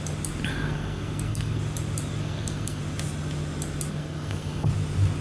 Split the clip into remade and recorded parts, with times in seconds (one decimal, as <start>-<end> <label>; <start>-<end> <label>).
0.0-0.5 recorded; 0.5-1.6 remade; 1.6-2.2 recorded; 2.2-2.8 remade; 2.8-3.9 recorded; 3.9-4.7 remade; 4.7-5.2 recorded